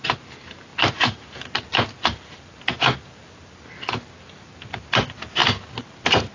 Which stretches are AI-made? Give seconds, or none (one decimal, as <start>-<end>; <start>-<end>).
none